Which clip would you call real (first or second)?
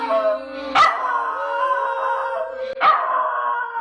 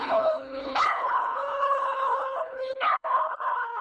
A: first